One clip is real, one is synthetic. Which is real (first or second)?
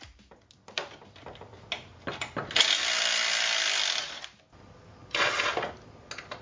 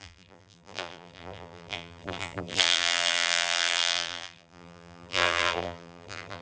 first